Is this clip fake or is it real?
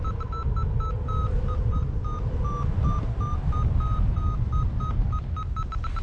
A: real